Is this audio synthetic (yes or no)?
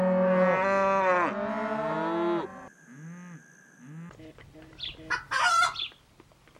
no